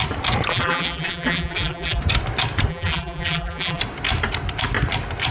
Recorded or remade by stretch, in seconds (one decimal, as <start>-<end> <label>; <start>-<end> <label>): 0.0-0.5 recorded; 0.5-2.0 remade; 2.0-2.7 recorded; 2.7-3.8 remade; 3.8-5.3 recorded